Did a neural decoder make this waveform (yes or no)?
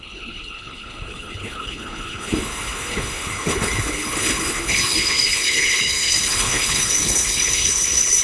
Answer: yes